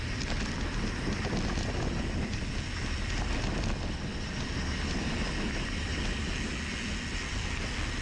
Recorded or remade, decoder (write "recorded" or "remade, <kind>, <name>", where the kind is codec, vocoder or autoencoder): recorded